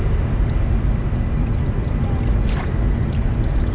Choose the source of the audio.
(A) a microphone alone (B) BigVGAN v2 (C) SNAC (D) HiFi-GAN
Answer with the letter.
A